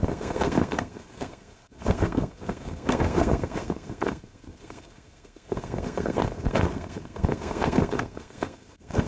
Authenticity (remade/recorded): remade